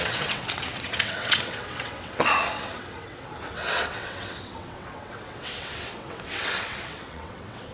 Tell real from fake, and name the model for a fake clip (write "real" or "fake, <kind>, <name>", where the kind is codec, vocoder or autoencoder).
fake, vocoder, WaveNeXt